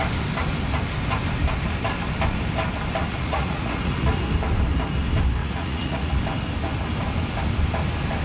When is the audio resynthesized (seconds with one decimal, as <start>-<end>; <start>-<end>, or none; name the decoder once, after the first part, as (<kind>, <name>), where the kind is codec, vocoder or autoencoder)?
3.1-4.1 (vocoder, Vocos); 5.4-6.2